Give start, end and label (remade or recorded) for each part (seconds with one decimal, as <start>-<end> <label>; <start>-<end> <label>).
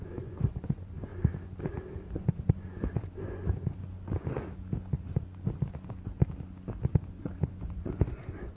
0.0-1.1 remade; 1.1-2.1 recorded; 2.1-3.8 remade; 3.8-6.9 recorded; 6.9-8.6 remade